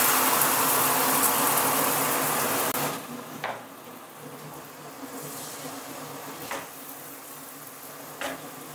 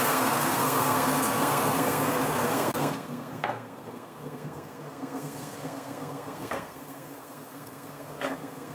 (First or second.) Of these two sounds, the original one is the first